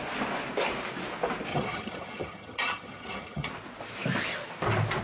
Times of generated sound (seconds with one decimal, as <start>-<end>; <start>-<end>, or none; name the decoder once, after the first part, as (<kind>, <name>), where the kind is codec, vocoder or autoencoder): 1.5-3.5 (vocoder, HiFi-GAN)